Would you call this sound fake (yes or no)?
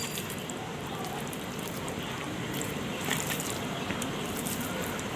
yes